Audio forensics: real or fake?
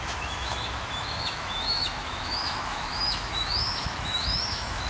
fake